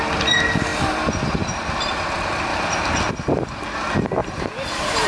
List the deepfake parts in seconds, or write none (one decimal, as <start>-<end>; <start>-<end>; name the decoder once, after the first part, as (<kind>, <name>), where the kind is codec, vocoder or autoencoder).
none